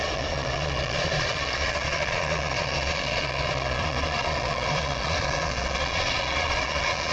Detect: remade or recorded remade